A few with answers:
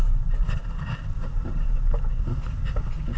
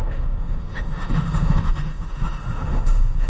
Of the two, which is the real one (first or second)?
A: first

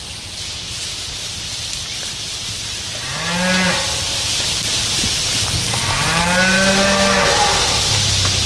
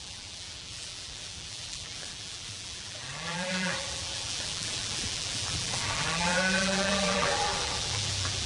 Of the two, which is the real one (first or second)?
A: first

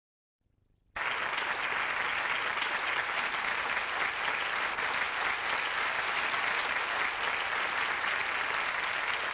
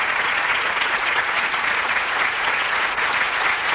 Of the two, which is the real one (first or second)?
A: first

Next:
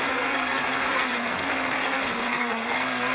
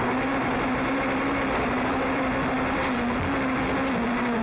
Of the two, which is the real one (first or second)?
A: second